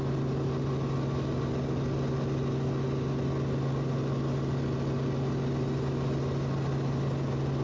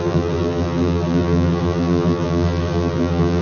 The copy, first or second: second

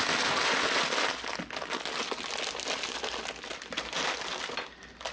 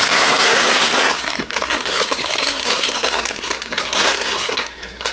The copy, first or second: second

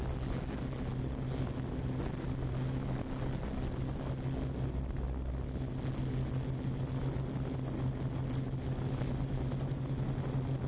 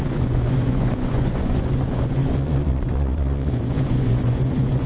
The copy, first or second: second